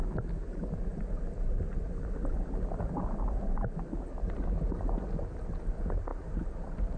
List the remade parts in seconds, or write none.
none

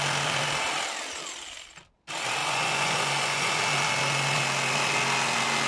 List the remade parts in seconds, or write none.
2.4-3.5

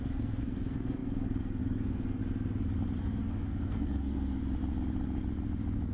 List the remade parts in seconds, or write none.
0.0-2.2; 3.0-4.4

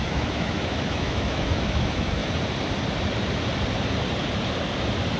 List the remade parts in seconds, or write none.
0.0-2.2

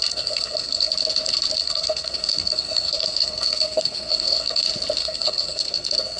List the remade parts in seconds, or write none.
0.0-0.9; 1.6-4.6; 5.0-6.2

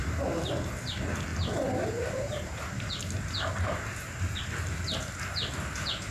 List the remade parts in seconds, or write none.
0.0-0.5; 1.3-2.7